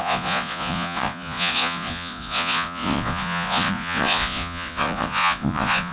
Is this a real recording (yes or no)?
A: no